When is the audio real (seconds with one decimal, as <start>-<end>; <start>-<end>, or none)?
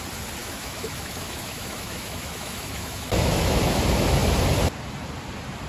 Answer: 0.0-0.4; 3.6-5.7